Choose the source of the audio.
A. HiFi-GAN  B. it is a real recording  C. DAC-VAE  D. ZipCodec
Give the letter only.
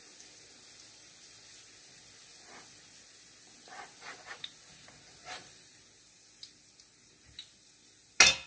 B